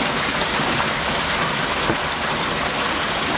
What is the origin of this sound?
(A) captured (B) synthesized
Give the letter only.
A